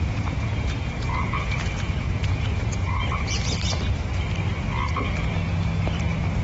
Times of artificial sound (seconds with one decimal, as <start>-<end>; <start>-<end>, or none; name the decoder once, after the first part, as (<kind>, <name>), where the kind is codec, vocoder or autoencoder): 0.0-3.0 (vocoder, Vocos)